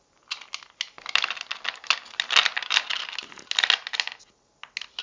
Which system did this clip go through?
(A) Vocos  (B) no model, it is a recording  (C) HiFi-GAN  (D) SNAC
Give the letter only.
B